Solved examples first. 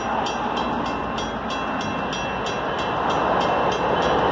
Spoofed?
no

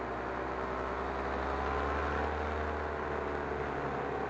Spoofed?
no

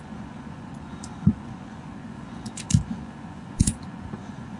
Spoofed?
yes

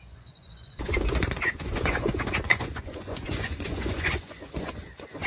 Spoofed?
yes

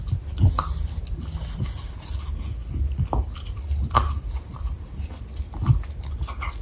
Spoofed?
no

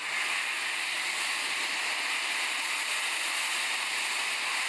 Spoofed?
no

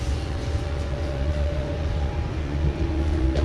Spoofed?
yes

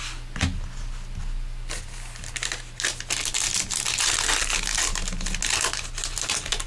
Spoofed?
no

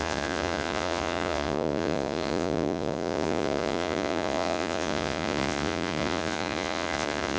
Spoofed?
yes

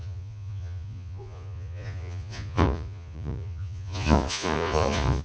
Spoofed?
yes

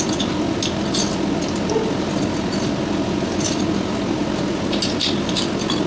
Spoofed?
no